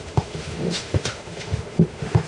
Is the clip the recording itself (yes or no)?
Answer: no